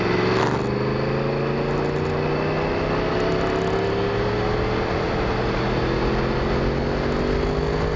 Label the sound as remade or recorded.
recorded